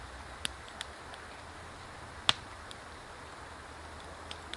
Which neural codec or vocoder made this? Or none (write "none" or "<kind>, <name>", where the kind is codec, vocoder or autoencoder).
none